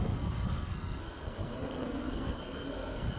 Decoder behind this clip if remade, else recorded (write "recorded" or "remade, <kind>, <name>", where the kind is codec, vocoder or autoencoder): remade, codec, SNAC